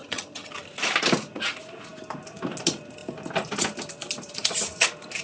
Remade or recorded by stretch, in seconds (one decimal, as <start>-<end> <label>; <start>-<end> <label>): 0.0-0.5 remade; 0.5-5.2 recorded